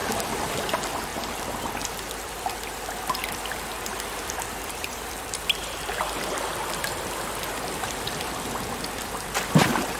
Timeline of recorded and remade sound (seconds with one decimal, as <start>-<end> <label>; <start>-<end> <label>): 0.0-0.7 recorded; 0.7-10.0 remade